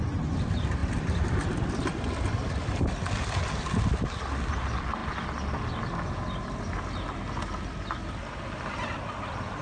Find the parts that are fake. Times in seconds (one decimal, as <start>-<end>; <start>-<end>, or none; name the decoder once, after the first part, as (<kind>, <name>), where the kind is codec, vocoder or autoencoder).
0.8-1.7 (vocoder, BigVGAN v2)